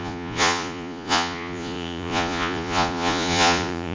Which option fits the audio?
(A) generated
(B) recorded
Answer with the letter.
A